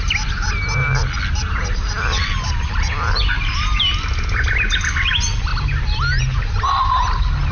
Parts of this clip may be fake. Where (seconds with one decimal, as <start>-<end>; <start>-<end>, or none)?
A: 1.4-1.9; 3.2-3.8